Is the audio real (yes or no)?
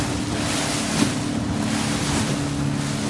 yes